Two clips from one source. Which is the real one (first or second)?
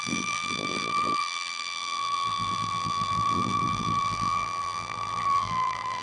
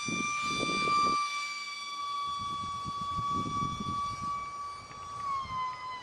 second